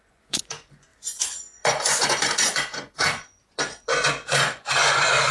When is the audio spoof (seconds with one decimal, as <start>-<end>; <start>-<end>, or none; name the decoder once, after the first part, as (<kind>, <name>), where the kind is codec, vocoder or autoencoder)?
0.0-5.3 (vocoder, Vocos)